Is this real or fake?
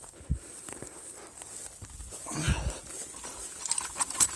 real